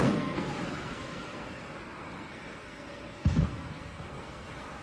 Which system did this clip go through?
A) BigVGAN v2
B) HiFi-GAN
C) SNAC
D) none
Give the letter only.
C